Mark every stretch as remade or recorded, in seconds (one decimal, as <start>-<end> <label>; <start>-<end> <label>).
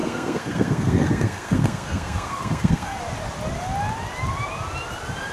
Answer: 0.0-3.0 remade; 3.0-5.3 recorded